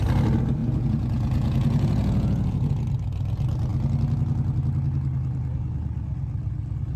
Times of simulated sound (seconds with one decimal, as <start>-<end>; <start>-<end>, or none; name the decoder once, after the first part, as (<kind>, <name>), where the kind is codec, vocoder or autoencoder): 0.6-2.7 (vocoder, Vocos)